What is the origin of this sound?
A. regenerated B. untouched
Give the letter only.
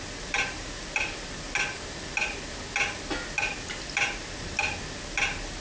B